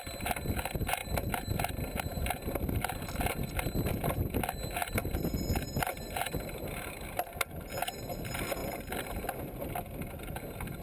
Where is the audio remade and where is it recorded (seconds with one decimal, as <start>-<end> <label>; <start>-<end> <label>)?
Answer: 0.0-10.8 recorded